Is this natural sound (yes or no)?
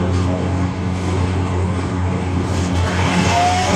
no